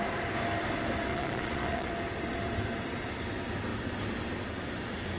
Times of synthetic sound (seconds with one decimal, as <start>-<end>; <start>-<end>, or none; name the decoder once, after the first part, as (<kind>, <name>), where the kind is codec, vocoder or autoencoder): 1.1-1.9 (vocoder, Vocos)